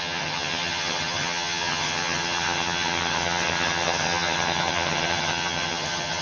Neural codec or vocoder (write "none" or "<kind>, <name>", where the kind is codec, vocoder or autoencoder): vocoder, HiFi-GAN